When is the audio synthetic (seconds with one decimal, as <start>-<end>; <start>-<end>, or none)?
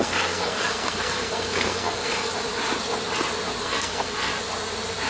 0.0-2.3; 3.6-4.3